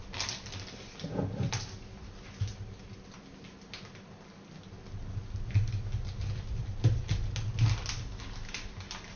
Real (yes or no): yes